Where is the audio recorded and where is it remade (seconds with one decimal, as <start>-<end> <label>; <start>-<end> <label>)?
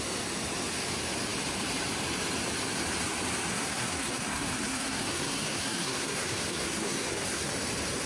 0.0-3.5 recorded; 3.5-7.5 remade; 7.5-8.1 recorded